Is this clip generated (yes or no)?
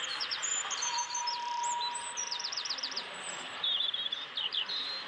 yes